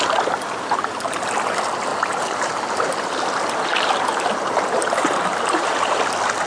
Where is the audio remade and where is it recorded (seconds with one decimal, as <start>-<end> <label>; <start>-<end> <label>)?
0.0-1.9 recorded; 1.9-2.6 remade; 2.6-3.7 recorded; 3.7-6.0 remade; 6.0-6.5 recorded